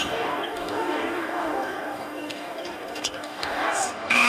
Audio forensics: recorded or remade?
remade